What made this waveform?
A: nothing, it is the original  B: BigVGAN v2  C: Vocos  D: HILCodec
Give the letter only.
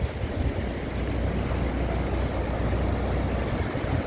A